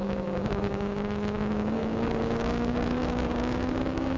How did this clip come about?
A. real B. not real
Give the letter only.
B